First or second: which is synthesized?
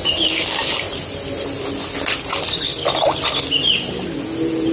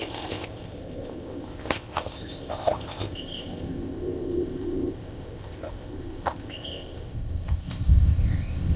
second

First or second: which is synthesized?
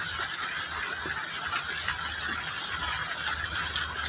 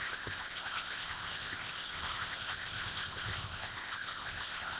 second